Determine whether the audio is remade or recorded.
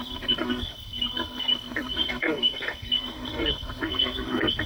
remade